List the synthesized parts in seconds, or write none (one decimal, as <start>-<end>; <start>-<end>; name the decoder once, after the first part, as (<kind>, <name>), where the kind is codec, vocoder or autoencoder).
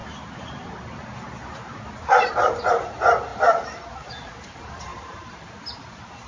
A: 0.0-2.6 (vocoder, BigVGAN v2); 4.9-6.3